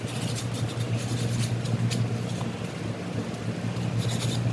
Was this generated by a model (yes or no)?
no